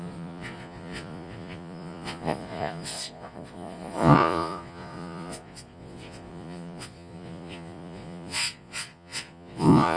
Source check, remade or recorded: remade